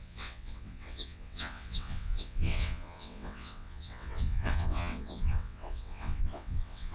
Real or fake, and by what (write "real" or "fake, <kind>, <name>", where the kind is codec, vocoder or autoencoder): fake, vocoder, WaveNeXt